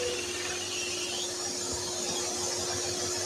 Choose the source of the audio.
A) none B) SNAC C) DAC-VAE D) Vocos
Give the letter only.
A